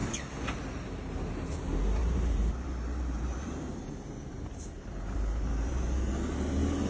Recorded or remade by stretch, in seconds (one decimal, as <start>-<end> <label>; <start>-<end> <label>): 0.0-2.0 recorded; 2.0-6.1 remade; 6.1-6.9 recorded

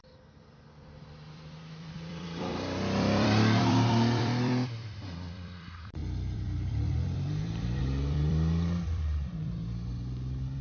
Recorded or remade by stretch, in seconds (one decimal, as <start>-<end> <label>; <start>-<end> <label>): 0.0-10.6 remade